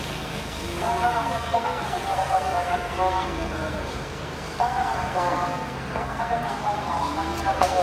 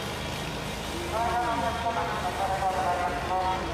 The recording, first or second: second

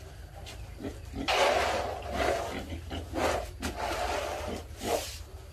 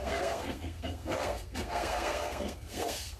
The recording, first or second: first